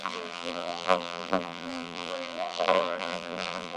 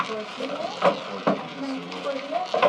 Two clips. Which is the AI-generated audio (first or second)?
first